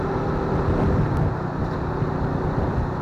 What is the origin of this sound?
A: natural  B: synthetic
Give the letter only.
A